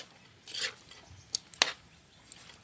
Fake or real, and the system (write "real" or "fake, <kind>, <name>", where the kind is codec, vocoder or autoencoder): real